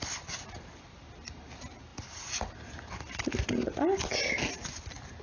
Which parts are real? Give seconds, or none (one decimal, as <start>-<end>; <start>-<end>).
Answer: 0.0-5.2